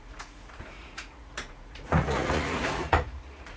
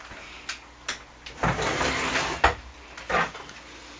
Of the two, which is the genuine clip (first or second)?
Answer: second